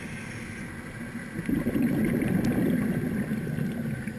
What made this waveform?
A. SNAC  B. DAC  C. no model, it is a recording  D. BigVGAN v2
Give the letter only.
C